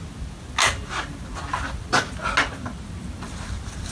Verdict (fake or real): real